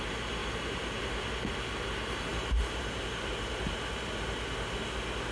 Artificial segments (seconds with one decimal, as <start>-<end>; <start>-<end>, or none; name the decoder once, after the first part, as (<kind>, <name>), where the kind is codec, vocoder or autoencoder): none